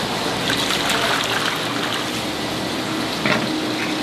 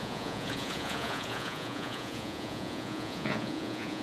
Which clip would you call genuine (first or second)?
first